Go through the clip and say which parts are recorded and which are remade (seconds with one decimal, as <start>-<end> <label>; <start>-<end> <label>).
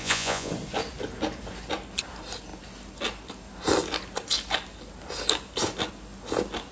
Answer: 0.0-0.5 remade; 0.5-6.7 recorded